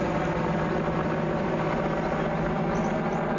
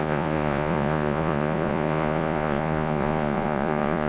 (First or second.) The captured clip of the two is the first